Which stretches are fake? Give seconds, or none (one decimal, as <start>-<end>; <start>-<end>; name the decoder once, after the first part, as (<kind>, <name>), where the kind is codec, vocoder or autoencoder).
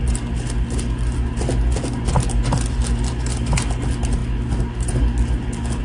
none